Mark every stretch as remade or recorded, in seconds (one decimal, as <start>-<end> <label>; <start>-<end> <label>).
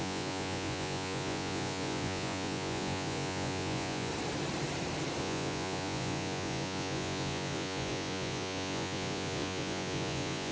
0.0-4.1 remade; 4.1-5.2 recorded; 5.2-10.5 remade